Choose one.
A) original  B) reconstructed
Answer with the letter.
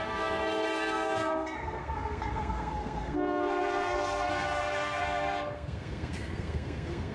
B